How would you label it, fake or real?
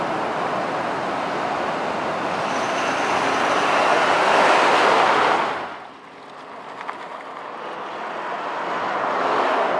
real